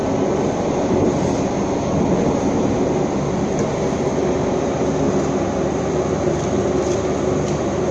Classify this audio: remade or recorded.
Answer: recorded